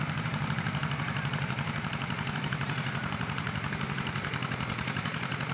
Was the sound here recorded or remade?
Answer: remade